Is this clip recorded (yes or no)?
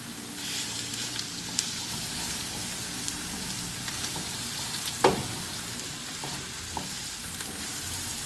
no